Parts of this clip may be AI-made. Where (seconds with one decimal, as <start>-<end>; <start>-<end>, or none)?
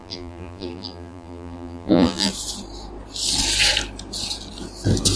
0.0-2.3